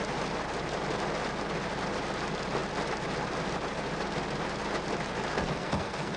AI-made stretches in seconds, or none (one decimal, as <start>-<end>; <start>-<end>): 5.3-6.2